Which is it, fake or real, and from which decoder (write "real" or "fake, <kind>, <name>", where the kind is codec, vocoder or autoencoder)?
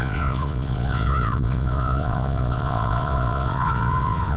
fake, vocoder, Vocos